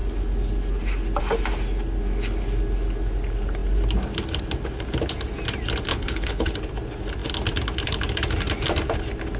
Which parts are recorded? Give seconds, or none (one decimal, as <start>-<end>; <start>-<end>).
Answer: 0.0-5.9; 6.5-9.4